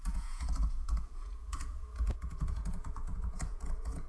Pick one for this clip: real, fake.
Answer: fake